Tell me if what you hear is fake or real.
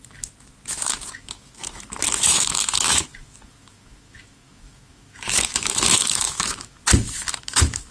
fake